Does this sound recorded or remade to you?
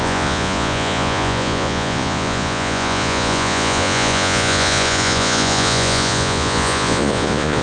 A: remade